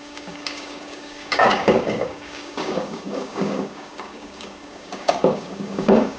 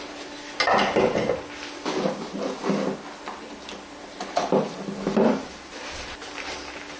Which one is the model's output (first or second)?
first